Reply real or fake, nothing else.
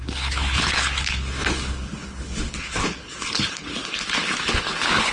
fake